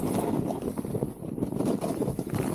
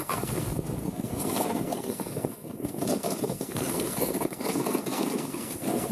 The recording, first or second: first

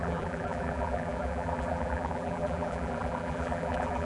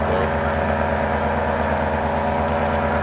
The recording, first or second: second